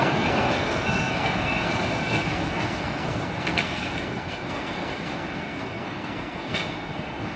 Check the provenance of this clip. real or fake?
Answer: fake